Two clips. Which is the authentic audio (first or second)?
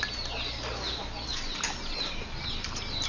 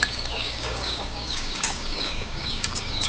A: first